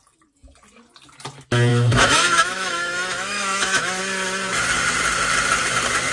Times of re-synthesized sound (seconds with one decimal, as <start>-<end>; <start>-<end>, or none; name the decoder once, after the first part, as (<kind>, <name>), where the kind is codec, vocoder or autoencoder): 1.7-4.0 (autoencoder, DAC-VAE)